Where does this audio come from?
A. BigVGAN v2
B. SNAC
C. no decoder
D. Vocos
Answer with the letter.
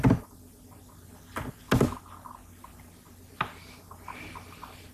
C